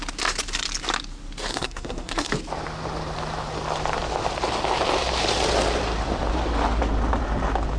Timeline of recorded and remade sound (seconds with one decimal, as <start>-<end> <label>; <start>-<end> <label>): 0.0-1.5 recorded; 1.5-2.3 remade; 2.3-7.8 recorded